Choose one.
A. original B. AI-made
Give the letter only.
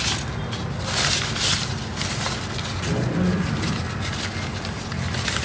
A